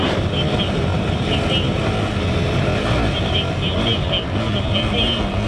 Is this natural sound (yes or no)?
yes